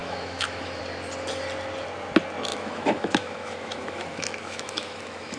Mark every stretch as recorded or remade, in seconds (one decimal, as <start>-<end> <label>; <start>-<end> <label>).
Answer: 0.0-0.8 remade; 0.8-2.5 recorded; 2.5-5.4 remade